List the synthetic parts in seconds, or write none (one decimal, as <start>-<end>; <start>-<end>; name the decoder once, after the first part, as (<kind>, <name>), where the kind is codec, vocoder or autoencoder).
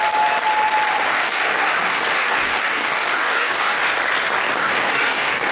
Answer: 1.1-3.8 (codec, DAC); 4.6-5.5